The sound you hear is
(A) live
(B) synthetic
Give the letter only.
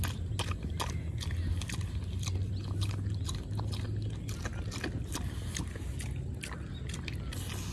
A